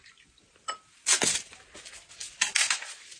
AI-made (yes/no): no